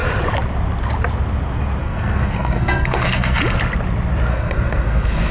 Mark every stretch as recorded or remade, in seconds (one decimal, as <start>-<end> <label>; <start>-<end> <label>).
0.0-1.8 recorded; 1.8-3.4 remade; 3.4-4.3 recorded; 4.3-5.3 remade